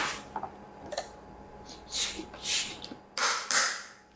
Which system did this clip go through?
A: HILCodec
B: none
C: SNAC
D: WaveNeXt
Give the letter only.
B